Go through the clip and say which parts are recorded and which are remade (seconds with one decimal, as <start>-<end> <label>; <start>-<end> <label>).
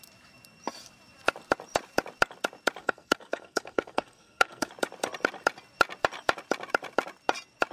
0.0-2.8 recorded; 2.8-4.7 remade; 4.7-7.7 recorded